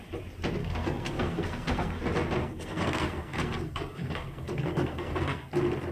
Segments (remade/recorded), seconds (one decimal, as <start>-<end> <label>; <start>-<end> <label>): 0.0-0.6 recorded; 0.6-2.0 remade; 2.0-2.4 recorded; 2.4-5.5 remade; 5.5-5.9 recorded